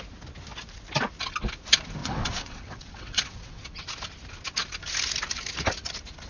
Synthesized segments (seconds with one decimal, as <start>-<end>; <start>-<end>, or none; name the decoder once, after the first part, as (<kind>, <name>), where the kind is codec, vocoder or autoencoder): 2.0-3.6 (vocoder, WaveNeXt)